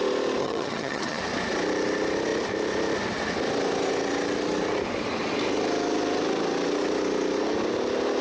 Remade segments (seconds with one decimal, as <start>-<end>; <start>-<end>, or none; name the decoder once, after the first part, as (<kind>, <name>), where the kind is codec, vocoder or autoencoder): 0.4-1.2 (vocoder, HiFi-GAN)